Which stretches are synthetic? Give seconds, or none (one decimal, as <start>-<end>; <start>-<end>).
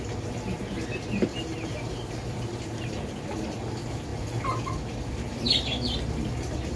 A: 1.3-2.6